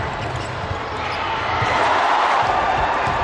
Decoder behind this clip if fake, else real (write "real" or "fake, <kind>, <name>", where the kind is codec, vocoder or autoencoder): real